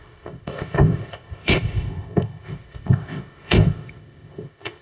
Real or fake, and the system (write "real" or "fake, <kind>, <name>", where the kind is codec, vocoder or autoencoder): fake, codec, ZipCodec